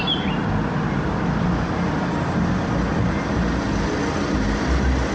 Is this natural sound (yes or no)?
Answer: yes